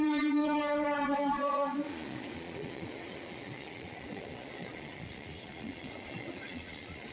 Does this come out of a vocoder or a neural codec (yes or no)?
yes